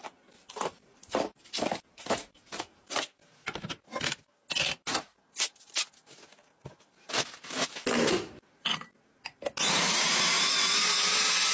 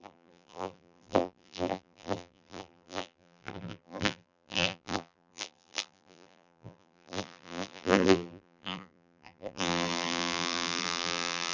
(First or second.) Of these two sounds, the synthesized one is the second